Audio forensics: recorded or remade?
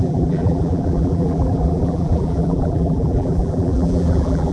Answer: remade